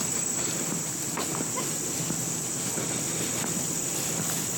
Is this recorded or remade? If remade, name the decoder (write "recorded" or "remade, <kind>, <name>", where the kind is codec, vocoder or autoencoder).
recorded